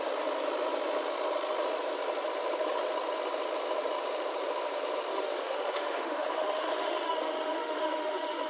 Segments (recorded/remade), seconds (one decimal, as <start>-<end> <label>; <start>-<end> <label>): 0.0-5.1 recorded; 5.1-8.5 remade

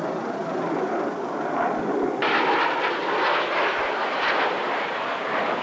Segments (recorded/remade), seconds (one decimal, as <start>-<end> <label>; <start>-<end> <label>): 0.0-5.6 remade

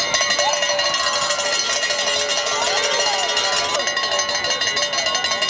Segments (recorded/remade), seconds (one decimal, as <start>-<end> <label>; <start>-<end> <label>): 0.0-5.5 recorded

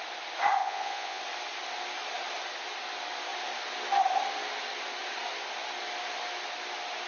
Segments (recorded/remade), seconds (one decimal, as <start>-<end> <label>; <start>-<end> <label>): 0.0-0.6 recorded; 0.6-1.2 remade; 1.2-7.1 recorded